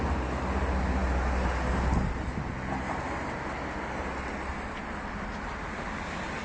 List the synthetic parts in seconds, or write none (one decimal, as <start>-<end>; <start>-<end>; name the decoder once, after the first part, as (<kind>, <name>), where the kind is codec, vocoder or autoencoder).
none